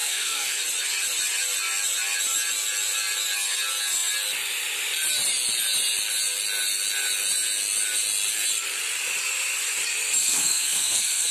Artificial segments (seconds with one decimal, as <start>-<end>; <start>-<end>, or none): 0.0-0.6; 10.2-11.3